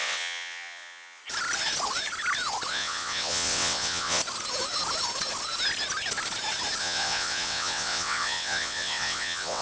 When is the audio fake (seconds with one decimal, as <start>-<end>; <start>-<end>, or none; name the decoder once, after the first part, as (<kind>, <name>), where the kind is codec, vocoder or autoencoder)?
0.0-1.2 (vocoder, WaveNeXt); 2.7-4.2; 6.8-9.6